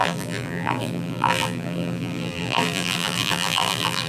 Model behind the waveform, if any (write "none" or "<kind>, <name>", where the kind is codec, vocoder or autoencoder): vocoder, BigVGAN v2